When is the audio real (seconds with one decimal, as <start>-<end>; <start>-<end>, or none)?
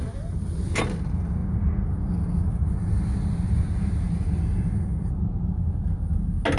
0.0-6.6